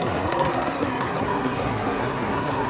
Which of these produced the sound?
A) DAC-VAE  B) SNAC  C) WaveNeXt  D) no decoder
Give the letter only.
B